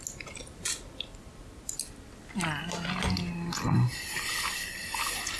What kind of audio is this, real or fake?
real